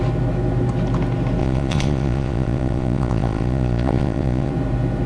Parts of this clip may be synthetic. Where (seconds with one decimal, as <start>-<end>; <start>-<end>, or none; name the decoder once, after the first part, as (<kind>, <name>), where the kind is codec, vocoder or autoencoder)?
1.4-4.5 (vocoder, Vocos)